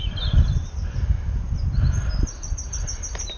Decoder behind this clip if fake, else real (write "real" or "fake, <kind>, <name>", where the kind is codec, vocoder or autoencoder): real